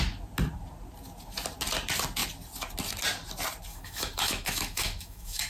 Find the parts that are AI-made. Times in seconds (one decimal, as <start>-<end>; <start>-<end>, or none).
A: 3.7-5.5